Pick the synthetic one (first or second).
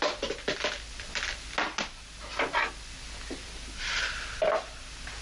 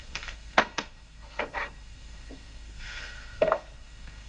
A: second